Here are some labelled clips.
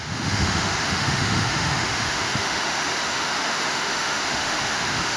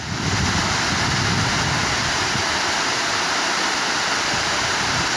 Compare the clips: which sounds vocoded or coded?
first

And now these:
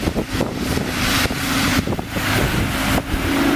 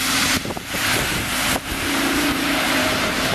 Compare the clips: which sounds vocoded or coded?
second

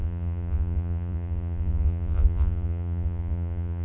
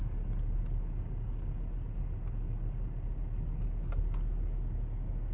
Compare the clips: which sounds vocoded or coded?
first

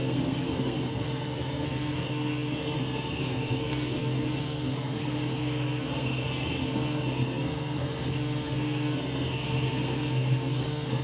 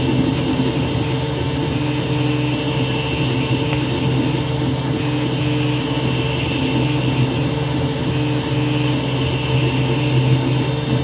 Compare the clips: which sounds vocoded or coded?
first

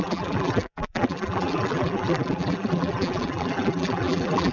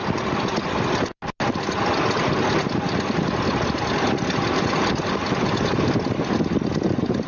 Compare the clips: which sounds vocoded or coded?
first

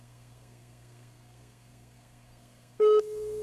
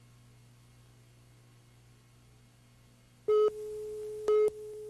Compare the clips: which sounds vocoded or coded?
first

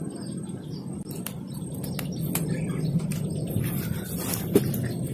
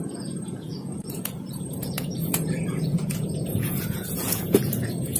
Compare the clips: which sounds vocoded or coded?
second